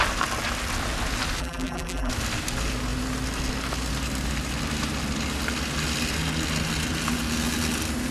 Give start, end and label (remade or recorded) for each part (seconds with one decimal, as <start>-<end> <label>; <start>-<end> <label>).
0.0-1.4 recorded; 1.4-2.1 remade; 2.1-8.1 recorded